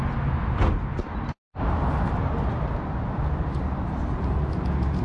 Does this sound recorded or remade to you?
recorded